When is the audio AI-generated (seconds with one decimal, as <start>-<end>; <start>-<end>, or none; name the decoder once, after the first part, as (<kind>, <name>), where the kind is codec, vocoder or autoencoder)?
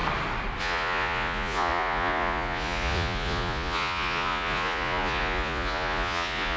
0.6-6.6 (vocoder, Vocos)